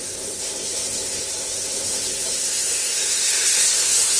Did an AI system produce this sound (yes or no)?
yes